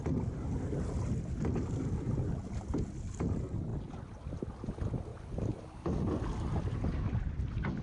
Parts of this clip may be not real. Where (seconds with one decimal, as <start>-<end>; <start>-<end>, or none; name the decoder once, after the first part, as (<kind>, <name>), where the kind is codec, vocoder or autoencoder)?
none